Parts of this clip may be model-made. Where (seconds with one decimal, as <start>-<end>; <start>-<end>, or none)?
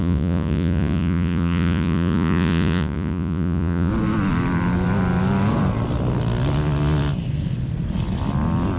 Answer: 0.0-3.9